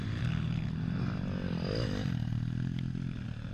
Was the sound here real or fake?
real